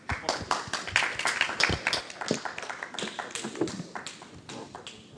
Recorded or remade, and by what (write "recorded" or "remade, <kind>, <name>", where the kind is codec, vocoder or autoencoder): recorded